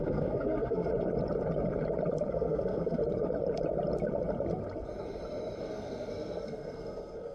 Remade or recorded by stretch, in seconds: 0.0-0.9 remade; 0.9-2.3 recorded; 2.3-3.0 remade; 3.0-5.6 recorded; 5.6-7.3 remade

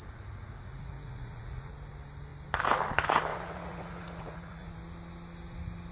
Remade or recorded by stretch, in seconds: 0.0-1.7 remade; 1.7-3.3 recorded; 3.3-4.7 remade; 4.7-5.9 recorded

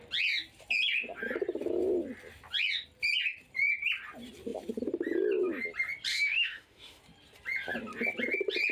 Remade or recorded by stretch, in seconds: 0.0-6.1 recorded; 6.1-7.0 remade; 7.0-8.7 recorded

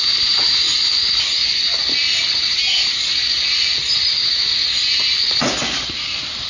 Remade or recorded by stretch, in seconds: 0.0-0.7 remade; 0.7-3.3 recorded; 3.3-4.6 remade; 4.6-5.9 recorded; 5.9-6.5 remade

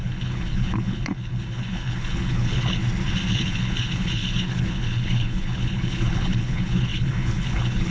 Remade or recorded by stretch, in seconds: 0.0-2.8 remade; 2.8-3.3 recorded; 3.3-7.9 remade

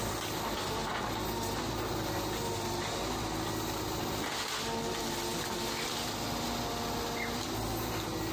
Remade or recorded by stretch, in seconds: 0.0-8.3 recorded

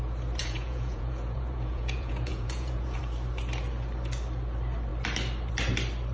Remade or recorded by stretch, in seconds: 0.0-0.4 recorded; 0.4-3.0 remade; 3.0-6.1 recorded